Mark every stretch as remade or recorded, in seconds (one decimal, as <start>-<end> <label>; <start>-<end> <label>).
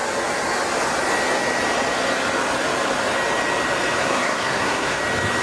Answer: 0.0-4.0 recorded; 4.0-5.0 remade; 5.0-5.4 recorded